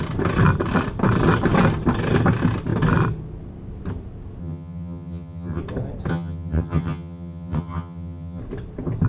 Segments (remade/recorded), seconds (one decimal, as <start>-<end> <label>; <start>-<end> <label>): 0.0-4.4 recorded; 4.4-5.6 remade; 5.6-6.1 recorded; 6.1-8.4 remade; 8.4-9.1 recorded